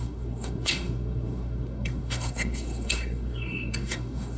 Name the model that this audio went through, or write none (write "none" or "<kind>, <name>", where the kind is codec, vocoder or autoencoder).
codec, SNAC